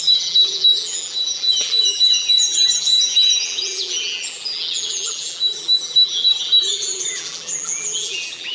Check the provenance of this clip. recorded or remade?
remade